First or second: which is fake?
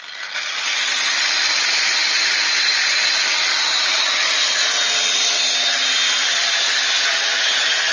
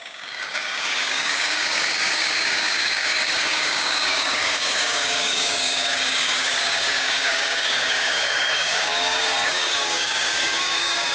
second